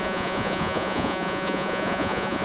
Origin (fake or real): fake